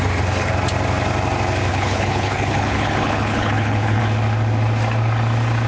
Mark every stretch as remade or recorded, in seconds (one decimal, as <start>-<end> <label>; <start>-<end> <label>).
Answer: 0.0-1.7 recorded; 1.7-4.0 remade; 4.0-5.7 recorded